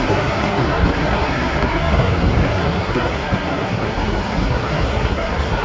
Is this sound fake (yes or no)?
yes